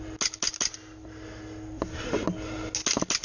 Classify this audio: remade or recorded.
recorded